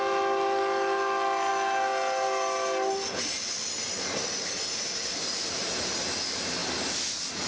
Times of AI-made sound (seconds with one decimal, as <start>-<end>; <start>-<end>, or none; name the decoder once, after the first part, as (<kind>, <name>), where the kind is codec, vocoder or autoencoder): none